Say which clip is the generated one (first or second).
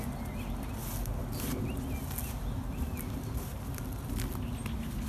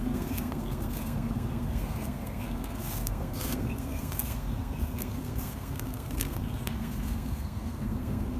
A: second